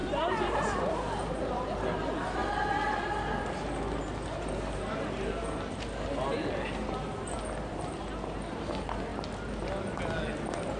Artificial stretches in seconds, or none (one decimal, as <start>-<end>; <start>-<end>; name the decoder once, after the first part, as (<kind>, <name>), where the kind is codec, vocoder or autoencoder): none